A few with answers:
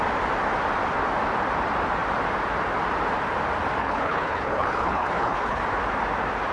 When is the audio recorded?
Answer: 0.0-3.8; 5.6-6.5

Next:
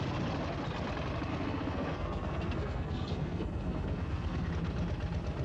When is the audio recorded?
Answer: 0.0-1.3; 4.5-5.4

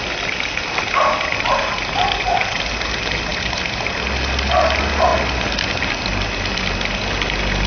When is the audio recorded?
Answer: 0.0-3.3; 3.8-7.7

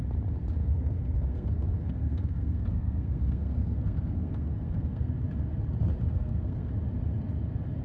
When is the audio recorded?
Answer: 0.0-0.6; 5.1-6.1; 6.7-7.8

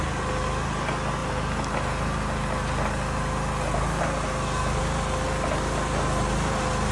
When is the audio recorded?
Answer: 0.0-6.9

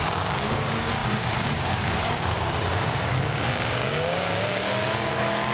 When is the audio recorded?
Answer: none